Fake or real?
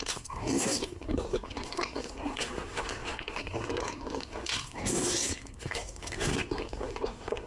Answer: fake